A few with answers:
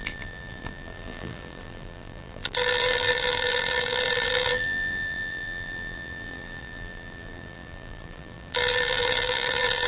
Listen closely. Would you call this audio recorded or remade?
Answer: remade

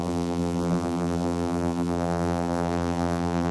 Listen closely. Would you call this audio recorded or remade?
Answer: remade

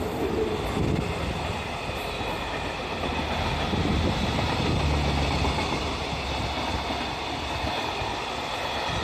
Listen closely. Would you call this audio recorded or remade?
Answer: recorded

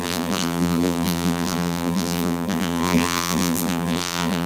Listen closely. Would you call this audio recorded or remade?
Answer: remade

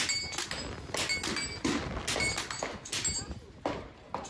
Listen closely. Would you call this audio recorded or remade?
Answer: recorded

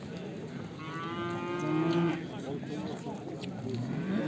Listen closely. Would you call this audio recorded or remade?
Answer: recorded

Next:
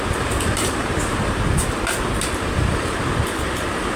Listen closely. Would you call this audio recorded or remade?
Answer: recorded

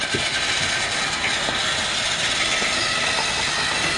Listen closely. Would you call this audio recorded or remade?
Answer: recorded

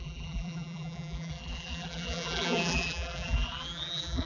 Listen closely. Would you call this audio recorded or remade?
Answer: remade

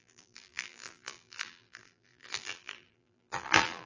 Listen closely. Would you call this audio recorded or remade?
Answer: remade